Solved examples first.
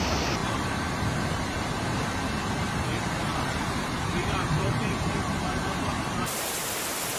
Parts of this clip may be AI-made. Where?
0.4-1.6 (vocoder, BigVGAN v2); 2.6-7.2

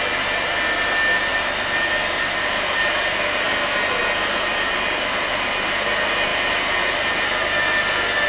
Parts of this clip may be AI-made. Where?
1.3-4.0 (vocoder, BigVGAN v2); 6.3-7.3

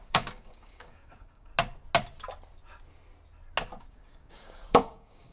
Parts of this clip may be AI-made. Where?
0.0-1.5 (codec, DAC); 3.8-5.3

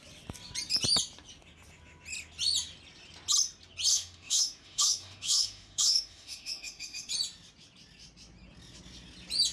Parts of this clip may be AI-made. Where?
3.9-7.1 (autoencoder, DAC-VAE)

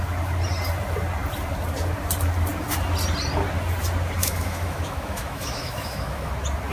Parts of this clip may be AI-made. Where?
4.2-6.3 (autoencoder, DAC-VAE)

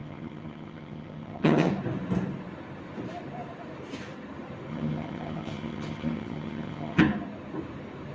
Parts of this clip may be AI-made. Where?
0.0-1.7 (vocoder, HiFi-GAN); 4.7-7.0